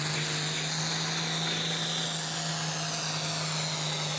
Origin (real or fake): real